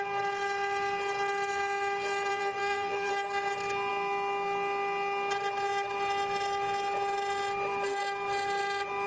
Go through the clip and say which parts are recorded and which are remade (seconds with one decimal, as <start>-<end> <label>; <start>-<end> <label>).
0.0-2.3 recorded; 2.3-3.1 remade; 3.1-9.1 recorded

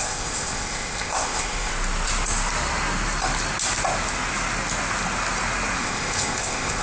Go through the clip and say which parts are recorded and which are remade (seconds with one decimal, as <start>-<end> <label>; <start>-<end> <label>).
0.0-1.7 remade; 1.7-5.8 recorded; 5.8-6.8 remade

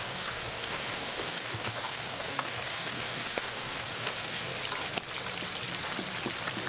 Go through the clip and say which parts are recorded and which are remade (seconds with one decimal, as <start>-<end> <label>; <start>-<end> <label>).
0.0-4.5 remade; 4.5-6.7 recorded

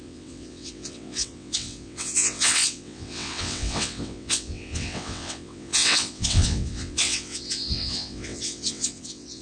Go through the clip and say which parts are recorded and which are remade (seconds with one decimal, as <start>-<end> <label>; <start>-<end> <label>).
0.0-9.4 remade

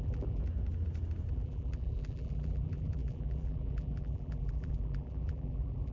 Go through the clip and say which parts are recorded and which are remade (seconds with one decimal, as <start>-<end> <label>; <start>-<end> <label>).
0.0-0.4 remade; 0.4-1.3 recorded; 1.3-5.9 remade

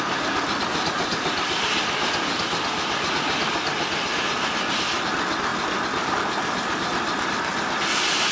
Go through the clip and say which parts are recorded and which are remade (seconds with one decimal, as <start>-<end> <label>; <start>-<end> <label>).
0.0-8.3 recorded

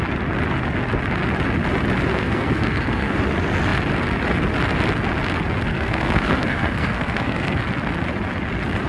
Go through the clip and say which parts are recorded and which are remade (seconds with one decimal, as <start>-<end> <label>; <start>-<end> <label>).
0.0-2.1 recorded; 2.1-3.2 remade; 3.2-5.7 recorded; 5.7-7.6 remade; 7.6-8.9 recorded

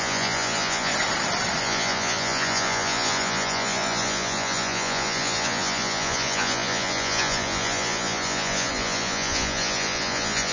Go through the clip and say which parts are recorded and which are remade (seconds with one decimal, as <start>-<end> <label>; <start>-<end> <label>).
0.0-0.9 remade; 0.9-1.6 recorded; 1.6-10.5 remade